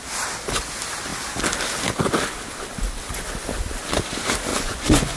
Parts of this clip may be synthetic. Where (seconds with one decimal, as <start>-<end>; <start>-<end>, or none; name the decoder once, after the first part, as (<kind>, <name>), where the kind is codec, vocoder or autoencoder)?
4.5-5.2 (vocoder, Vocos)